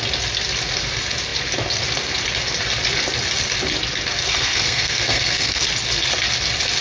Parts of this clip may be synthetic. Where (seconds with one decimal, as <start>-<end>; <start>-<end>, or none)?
4.1-5.6